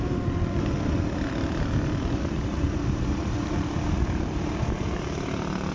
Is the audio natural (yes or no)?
yes